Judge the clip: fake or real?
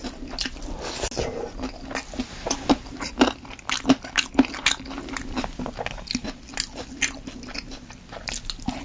real